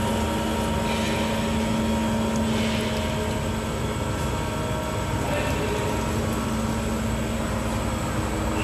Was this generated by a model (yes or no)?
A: no